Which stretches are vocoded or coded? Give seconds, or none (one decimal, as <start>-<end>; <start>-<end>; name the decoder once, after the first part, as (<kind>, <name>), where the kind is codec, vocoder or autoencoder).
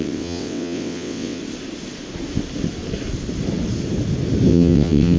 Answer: 0.0-1.4 (vocoder, WaveNeXt); 4.5-5.2